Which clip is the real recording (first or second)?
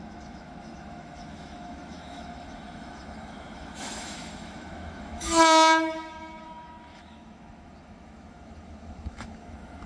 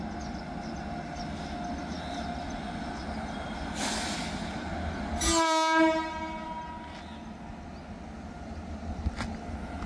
second